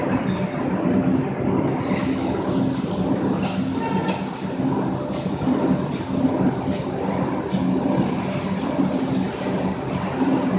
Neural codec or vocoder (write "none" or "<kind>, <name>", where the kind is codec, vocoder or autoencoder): none